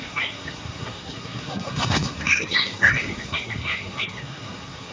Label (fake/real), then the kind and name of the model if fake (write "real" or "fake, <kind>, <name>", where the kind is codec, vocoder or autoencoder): fake, codec, SNAC